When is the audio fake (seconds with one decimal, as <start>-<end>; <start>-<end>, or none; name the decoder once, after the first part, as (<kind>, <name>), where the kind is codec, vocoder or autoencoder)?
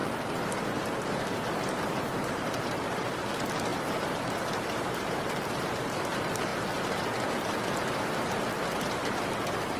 0.6-6.5 (vocoder, BigVGAN v2); 8.8-9.8